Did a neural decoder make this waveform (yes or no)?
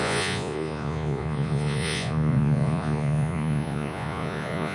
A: yes